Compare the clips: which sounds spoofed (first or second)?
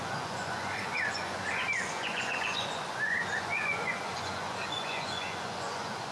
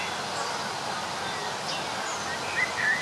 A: first